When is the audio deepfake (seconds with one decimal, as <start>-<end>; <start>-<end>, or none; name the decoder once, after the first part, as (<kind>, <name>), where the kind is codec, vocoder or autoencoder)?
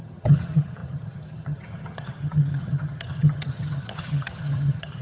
0.0-5.0 (vocoder, HiFi-GAN)